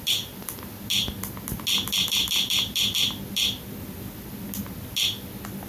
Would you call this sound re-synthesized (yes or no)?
no